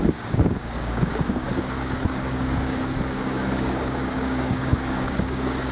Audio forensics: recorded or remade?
remade